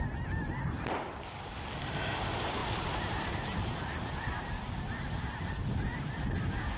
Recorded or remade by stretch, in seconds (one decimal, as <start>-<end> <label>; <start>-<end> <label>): 0.0-6.8 recorded